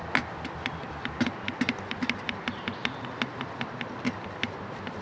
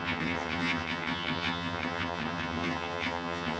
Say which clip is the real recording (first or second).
first